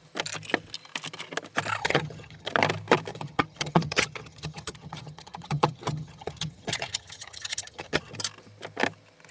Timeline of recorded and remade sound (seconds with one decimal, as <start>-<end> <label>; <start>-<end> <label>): 0.0-1.8 recorded; 1.8-2.5 remade; 2.5-3.1 recorded; 3.1-8.1 remade; 8.1-9.3 recorded